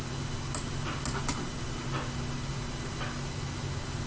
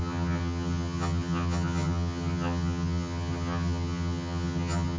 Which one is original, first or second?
first